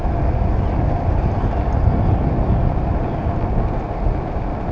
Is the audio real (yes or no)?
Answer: yes